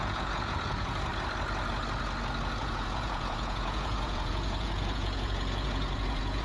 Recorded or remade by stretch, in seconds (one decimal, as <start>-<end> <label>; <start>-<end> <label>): 0.0-1.1 remade; 1.1-2.6 recorded; 2.6-6.4 remade